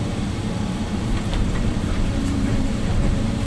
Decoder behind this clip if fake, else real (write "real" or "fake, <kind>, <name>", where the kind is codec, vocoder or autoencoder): fake, vocoder, BigVGAN v2